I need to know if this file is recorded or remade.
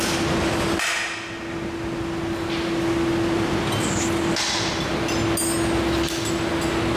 recorded